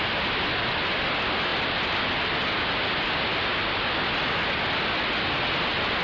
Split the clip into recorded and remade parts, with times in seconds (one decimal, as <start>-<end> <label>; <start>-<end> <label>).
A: 0.0-6.0 recorded